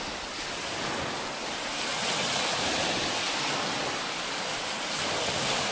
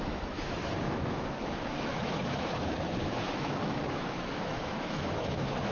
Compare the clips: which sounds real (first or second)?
first